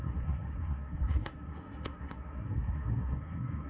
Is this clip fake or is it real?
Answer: fake